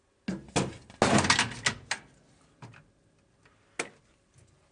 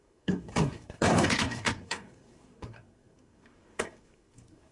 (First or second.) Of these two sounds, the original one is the first